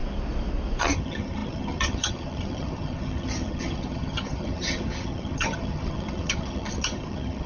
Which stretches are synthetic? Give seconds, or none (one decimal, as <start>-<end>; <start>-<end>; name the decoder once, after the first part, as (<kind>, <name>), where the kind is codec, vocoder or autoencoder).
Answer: 0.8-7.5 (vocoder, HiFi-GAN)